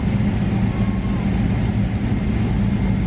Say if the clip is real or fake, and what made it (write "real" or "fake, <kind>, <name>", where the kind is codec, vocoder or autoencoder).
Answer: real